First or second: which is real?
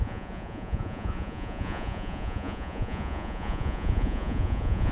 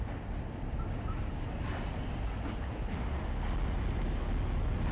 second